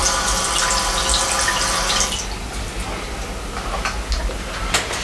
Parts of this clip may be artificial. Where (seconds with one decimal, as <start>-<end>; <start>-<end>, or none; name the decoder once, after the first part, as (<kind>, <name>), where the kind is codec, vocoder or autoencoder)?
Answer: none